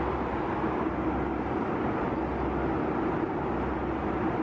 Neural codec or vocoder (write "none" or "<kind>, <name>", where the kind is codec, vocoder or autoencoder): none